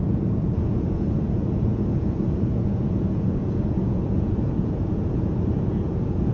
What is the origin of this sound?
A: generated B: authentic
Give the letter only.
A